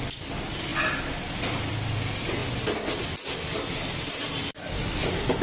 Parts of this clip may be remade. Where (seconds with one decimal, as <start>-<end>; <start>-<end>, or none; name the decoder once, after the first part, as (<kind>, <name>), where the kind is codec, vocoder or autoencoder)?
4.5-5.4 (autoencoder, DAC-VAE)